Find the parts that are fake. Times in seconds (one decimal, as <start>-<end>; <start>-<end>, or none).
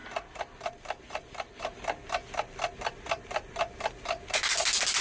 none